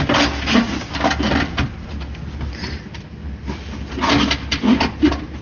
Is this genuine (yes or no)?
yes